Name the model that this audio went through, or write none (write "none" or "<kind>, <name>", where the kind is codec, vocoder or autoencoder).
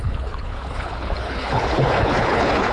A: codec, HILCodec